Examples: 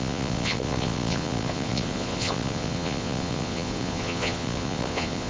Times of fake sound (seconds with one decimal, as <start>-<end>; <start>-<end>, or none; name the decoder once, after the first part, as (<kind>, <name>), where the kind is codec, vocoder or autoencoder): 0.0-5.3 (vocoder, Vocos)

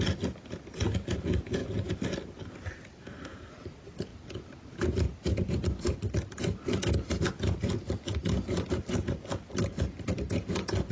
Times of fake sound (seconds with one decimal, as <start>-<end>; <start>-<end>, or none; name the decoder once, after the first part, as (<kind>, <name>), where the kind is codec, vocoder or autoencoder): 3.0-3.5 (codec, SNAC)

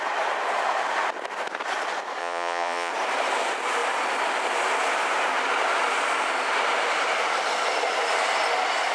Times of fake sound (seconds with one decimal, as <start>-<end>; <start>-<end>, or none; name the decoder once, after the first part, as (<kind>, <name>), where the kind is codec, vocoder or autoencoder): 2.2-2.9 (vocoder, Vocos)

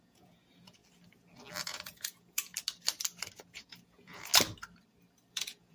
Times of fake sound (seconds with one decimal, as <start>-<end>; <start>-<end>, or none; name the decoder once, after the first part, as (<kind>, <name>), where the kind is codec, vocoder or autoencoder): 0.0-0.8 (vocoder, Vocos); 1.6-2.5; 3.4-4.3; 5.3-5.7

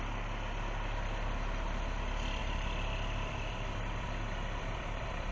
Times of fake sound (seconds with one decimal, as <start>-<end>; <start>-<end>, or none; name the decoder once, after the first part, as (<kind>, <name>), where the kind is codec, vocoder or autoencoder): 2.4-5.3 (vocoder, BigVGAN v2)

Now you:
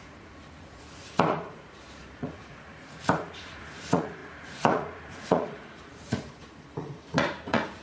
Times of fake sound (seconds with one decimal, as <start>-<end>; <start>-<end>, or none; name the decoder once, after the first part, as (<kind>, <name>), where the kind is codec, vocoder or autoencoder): 0.0-7.8 (vocoder, Vocos)